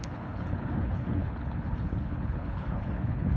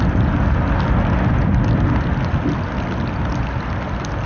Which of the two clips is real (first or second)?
second